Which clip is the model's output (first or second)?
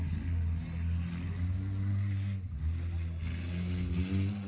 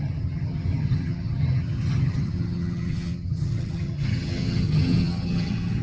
second